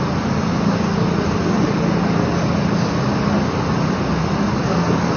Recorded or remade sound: recorded